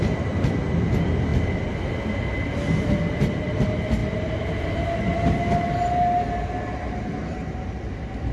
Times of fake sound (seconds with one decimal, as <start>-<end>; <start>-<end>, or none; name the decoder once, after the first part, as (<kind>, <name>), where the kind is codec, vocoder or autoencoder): none